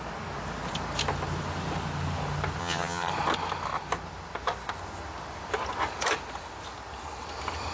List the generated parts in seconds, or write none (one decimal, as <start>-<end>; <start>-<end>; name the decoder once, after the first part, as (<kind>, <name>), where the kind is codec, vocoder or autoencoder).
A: 2.6-3.1 (vocoder, HiFi-GAN)